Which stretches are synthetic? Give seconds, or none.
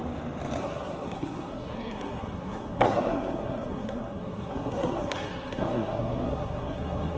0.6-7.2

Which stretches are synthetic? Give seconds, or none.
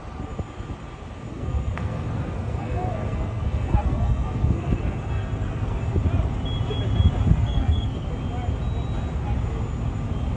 1.3-5.8; 7.3-8.1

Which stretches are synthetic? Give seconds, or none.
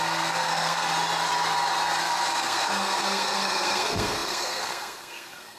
0.0-0.9; 2.0-5.6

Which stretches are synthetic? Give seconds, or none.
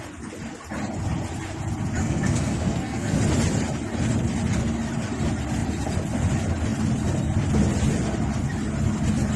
2.0-3.2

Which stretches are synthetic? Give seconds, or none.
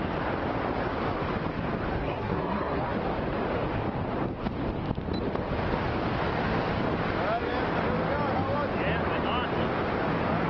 2.0-2.8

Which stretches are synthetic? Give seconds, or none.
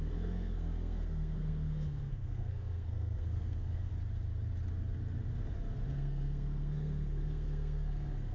0.0-3.9; 5.9-8.3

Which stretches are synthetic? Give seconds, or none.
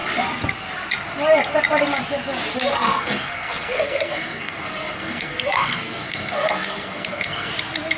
2.7-7.5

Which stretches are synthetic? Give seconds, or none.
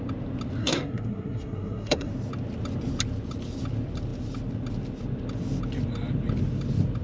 0.6-2.1